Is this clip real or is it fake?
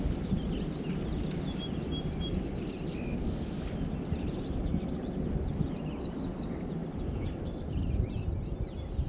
real